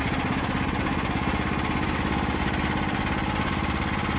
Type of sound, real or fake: real